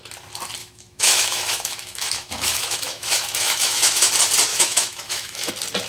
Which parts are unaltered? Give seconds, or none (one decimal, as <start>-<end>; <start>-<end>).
0.0-0.6; 4.1-4.5; 5.5-5.9